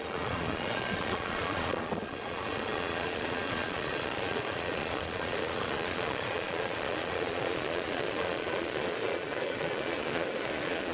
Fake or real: fake